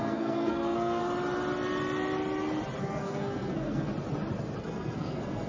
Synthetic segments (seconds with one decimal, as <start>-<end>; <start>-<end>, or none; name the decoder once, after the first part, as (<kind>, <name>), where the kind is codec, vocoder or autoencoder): 0.0-1.0 (codec, SNAC); 2.8-3.9; 4.6-5.5